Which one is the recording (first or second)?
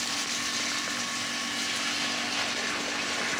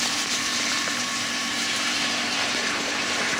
first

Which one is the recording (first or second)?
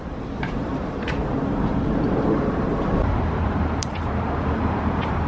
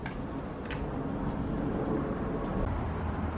second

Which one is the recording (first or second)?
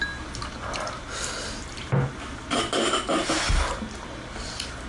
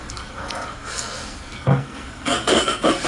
first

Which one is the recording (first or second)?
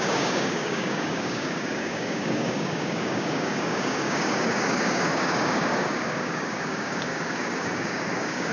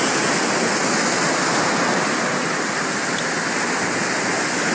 second